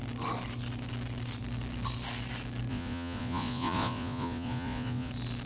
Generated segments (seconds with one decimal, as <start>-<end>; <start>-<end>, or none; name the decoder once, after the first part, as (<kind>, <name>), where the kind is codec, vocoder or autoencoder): 2.7-5.1 (vocoder, Vocos)